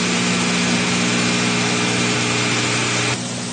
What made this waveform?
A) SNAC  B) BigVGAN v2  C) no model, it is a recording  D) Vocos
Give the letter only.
C